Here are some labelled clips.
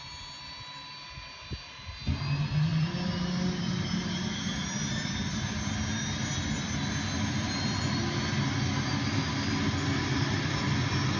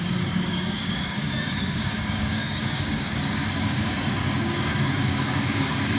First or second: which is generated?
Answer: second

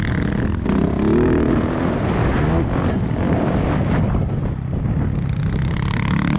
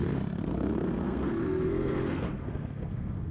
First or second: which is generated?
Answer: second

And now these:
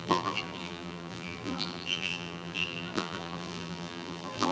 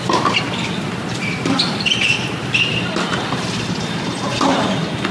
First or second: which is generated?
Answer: first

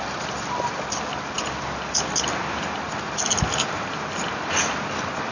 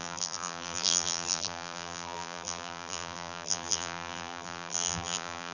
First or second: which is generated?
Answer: second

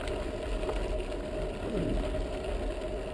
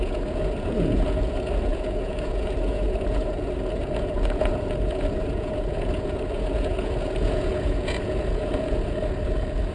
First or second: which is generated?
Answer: second